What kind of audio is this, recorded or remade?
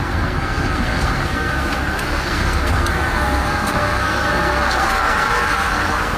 remade